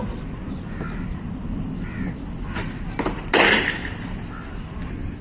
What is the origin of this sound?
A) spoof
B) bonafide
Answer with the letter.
B